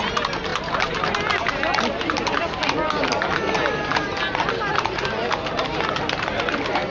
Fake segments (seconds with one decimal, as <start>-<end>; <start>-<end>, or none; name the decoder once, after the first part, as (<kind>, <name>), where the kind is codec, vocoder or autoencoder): none